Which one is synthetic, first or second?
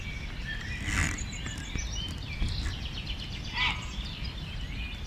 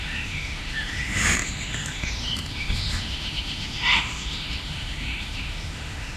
second